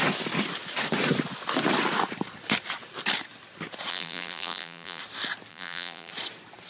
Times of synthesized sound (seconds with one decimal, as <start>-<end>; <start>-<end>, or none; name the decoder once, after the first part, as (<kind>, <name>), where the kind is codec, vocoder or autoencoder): 3.9-5.0 (vocoder, BigVGAN v2); 5.5-6.1